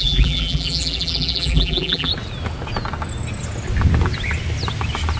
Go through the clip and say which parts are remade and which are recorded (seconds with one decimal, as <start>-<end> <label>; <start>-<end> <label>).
0.0-2.1 remade; 2.1-5.2 recorded